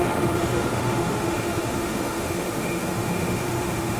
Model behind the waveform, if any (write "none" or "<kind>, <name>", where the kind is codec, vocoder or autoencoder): autoencoder, DAC-VAE